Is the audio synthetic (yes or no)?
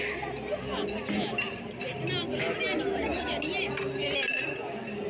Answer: no